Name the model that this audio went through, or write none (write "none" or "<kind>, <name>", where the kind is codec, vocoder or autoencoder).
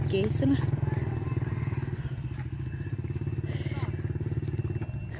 none